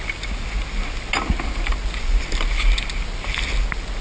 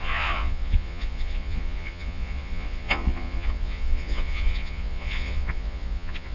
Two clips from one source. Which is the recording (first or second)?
first